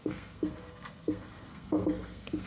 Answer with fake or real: fake